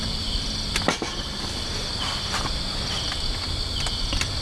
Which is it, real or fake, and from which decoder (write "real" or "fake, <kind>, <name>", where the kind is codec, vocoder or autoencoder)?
real